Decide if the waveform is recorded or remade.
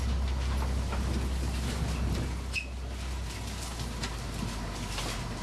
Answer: recorded